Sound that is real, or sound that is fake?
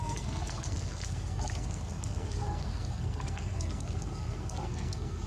fake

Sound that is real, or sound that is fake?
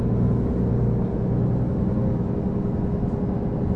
real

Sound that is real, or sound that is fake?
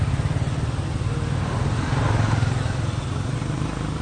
real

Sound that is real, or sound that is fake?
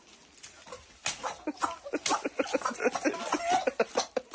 real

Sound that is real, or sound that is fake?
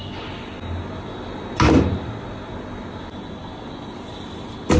real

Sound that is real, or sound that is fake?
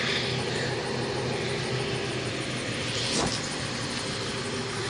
real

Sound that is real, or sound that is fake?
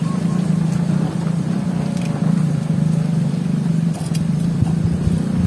fake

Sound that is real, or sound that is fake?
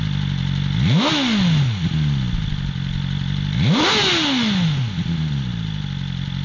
real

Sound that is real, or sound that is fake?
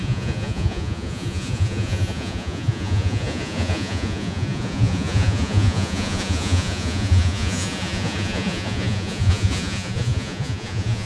fake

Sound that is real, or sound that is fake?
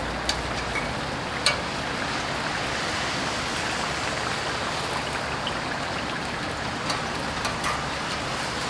real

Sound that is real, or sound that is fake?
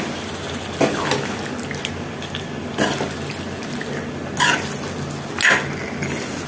real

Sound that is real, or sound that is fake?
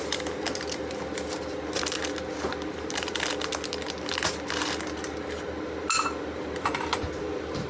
real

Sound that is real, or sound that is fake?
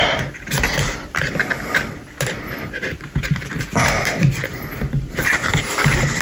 fake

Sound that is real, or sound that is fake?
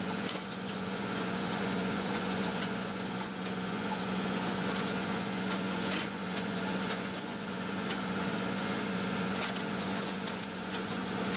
fake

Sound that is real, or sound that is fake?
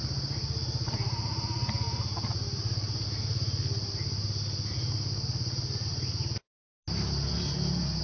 real